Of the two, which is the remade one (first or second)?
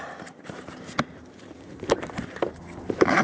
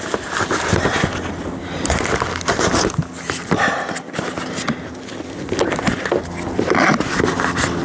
first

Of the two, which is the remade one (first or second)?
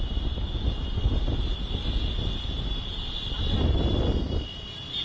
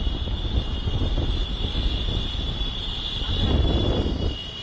second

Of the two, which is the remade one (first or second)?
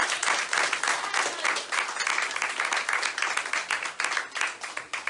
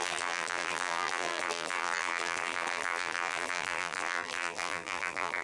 second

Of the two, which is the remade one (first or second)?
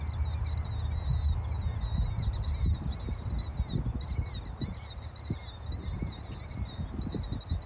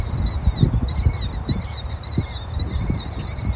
second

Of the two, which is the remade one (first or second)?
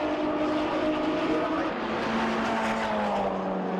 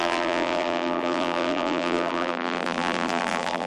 second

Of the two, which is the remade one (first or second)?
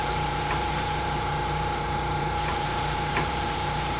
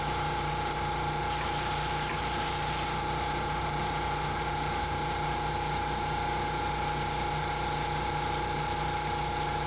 first